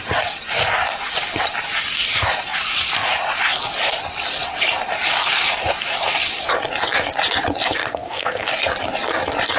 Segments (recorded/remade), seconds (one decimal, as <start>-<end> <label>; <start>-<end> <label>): 0.0-7.8 recorded; 7.8-8.5 remade; 8.5-9.6 recorded